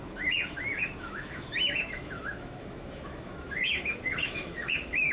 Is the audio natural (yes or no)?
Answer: no